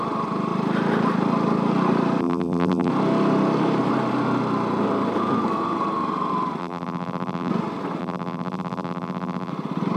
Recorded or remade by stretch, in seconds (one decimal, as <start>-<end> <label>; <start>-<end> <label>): 0.0-2.2 recorded; 2.2-2.9 remade; 2.9-6.6 recorded; 6.6-7.5 remade; 7.5-8.0 recorded; 8.0-9.5 remade; 9.5-10.0 recorded